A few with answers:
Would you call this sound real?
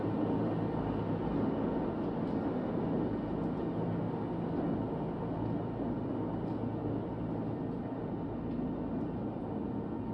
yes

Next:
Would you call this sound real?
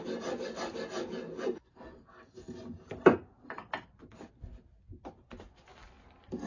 yes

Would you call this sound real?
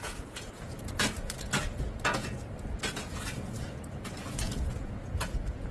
no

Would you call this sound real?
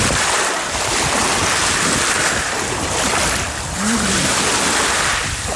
yes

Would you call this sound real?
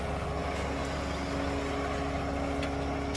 yes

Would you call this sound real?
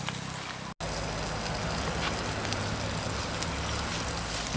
yes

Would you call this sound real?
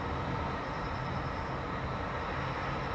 yes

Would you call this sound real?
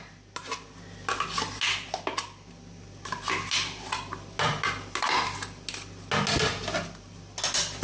yes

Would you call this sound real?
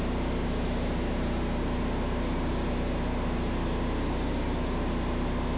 yes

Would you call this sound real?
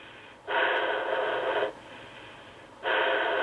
yes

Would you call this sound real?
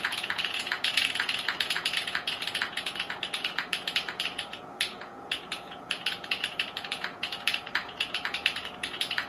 no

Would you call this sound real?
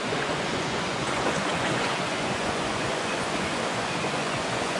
no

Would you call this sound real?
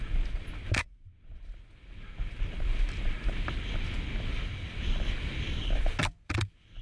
yes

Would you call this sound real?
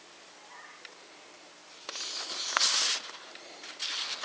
yes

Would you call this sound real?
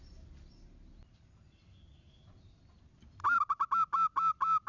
yes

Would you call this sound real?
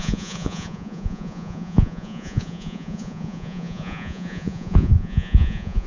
no